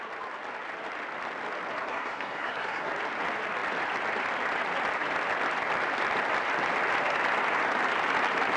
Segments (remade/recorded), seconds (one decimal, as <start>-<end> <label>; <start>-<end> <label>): 0.0-1.9 recorded; 1.9-2.9 remade; 2.9-8.6 recorded